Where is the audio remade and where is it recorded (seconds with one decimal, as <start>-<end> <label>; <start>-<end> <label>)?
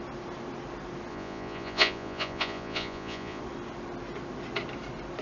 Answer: 0.0-1.1 recorded; 1.1-3.4 remade; 3.4-5.2 recorded